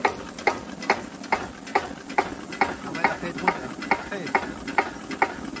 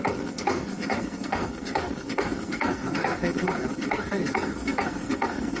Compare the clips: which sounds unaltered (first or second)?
first